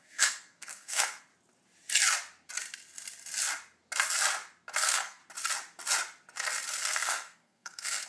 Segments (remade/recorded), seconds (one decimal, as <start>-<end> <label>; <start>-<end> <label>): 0.0-1.3 remade; 1.3-4.8 recorded; 4.8-5.2 remade; 5.2-6.8 recorded; 6.8-8.1 remade